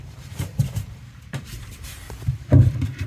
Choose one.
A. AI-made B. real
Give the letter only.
A